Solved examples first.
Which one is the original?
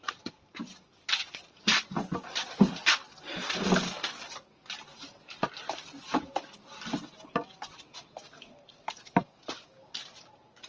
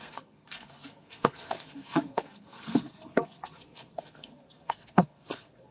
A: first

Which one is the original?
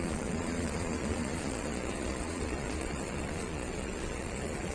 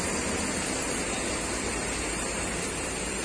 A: second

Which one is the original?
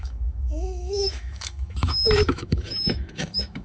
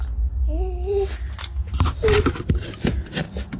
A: second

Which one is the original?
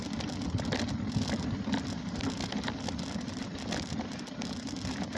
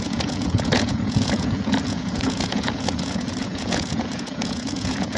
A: first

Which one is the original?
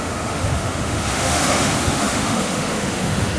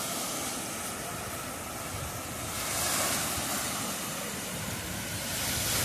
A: second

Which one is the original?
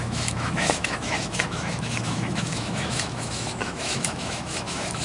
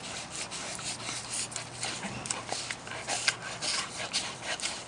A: second